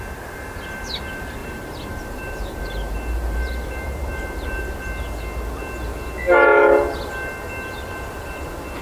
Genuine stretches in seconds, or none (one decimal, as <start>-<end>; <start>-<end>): 0.0-1.4; 4.6-8.8